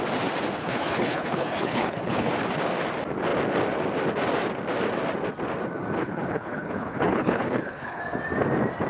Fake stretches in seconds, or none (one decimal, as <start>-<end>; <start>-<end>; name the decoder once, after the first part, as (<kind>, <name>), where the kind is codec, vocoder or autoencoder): 0.6-2.3 (codec, HILCodec); 6.0-8.0